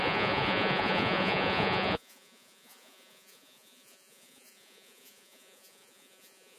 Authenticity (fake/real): fake